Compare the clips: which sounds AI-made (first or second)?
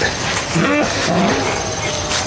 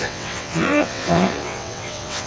second